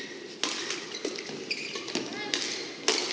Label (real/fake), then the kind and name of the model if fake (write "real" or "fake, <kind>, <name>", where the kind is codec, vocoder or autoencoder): real